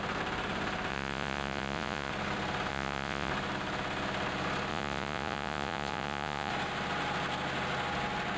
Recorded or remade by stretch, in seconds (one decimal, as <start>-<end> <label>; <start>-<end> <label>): 0.0-0.9 recorded; 0.9-2.1 remade; 2.1-2.7 recorded; 2.7-3.3 remade; 3.3-4.7 recorded; 4.7-6.5 remade; 6.5-8.4 recorded